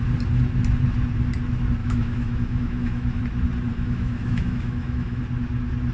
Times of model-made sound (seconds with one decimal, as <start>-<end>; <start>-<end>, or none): 1.8-3.2; 3.7-5.2